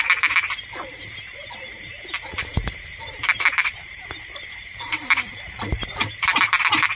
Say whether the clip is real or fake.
fake